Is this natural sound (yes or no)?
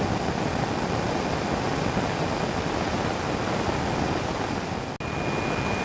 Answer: yes